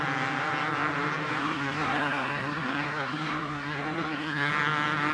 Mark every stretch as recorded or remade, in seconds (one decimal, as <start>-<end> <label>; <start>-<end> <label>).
0.0-1.4 recorded; 1.4-4.5 remade; 4.5-5.1 recorded